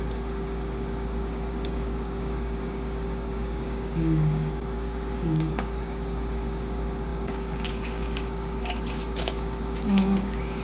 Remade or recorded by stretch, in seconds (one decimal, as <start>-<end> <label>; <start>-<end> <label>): 0.0-10.6 remade